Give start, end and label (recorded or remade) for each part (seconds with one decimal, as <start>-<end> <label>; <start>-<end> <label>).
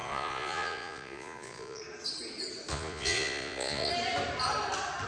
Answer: 0.0-1.8 remade; 1.8-2.7 recorded; 2.7-3.9 remade; 3.9-5.1 recorded